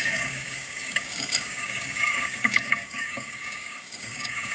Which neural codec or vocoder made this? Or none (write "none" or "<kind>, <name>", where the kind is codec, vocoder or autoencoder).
codec, DAC